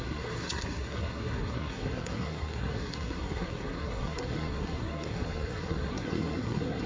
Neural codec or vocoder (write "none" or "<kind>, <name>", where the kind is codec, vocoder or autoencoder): codec, SNAC